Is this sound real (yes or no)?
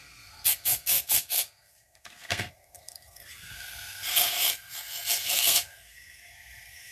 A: no